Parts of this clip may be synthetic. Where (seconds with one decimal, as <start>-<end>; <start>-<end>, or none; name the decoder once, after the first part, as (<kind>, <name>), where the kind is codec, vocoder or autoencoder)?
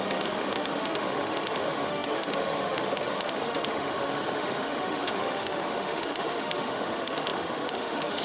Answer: 0.0-8.2 (autoencoder, DAC-VAE)